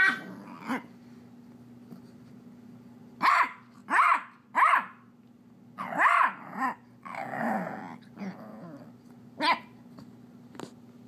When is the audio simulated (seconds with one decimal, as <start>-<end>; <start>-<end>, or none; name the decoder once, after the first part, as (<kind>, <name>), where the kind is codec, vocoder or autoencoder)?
none